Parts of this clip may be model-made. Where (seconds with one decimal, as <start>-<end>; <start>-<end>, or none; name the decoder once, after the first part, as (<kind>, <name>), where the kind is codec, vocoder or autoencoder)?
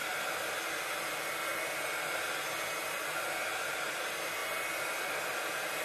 none